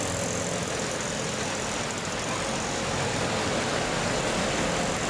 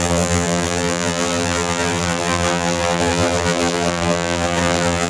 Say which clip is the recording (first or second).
first